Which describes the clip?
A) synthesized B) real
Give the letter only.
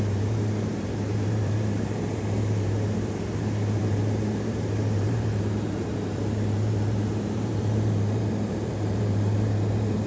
A